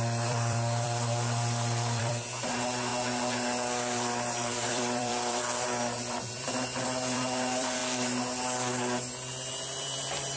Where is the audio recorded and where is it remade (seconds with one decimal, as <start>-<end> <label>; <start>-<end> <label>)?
0.0-2.9 remade; 2.9-4.7 recorded; 4.7-7.8 remade; 7.8-9.5 recorded; 9.5-10.4 remade